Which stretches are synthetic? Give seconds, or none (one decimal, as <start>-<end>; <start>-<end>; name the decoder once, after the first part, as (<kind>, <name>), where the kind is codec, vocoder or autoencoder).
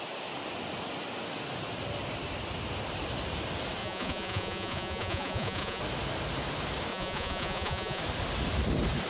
3.8-5.8 (vocoder, Vocos); 6.9-8.0